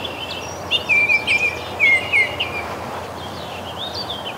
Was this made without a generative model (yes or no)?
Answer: no